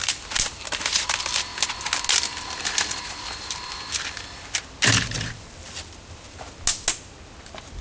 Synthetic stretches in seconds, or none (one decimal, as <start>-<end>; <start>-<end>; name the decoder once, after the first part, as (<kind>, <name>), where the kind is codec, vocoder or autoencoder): none